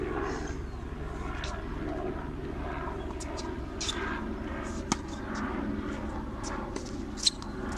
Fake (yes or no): no